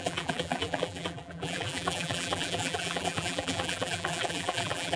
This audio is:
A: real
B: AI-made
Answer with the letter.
B